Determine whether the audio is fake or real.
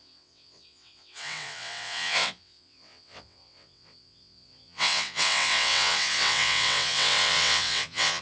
fake